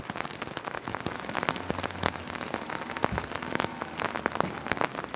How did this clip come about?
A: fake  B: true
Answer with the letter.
B